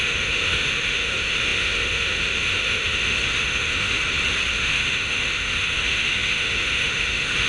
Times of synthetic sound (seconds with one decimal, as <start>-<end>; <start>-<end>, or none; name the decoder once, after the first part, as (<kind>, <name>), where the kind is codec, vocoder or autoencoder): 0.0-4.0 (autoencoder, DAC-VAE); 4.5-7.5